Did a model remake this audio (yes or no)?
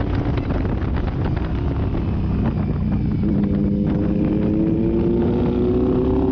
no